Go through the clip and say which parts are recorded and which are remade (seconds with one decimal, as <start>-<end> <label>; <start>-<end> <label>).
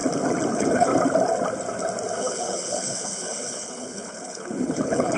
0.0-0.5 recorded; 0.5-0.9 remade; 0.9-2.2 recorded; 2.2-5.2 remade